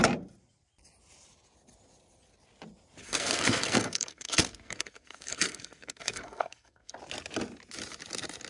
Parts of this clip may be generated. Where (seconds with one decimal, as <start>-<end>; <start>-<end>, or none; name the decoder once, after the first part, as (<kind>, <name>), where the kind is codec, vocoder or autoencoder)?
3.0-6.9 (codec, SNAC)